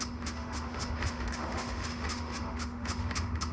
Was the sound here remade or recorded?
remade